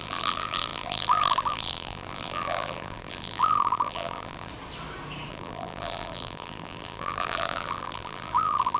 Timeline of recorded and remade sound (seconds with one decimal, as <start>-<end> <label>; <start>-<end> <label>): 0.0-4.5 remade; 4.5-5.3 recorded; 5.3-8.8 remade